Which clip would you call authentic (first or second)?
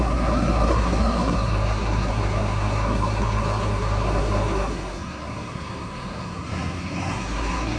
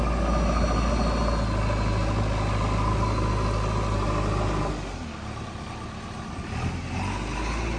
second